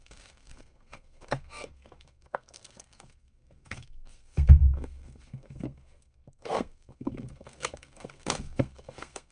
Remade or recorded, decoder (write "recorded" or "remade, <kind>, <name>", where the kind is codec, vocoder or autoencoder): remade, codec, SNAC